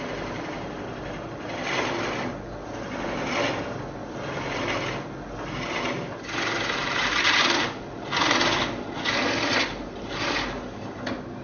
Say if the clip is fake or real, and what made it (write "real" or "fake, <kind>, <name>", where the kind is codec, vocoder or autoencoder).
real